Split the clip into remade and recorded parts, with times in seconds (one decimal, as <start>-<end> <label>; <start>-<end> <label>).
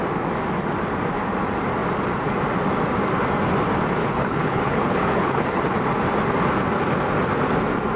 0.0-4.0 recorded; 4.0-5.6 remade; 5.6-8.0 recorded